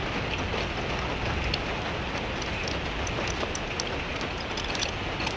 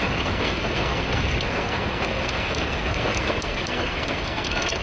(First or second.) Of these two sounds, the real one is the first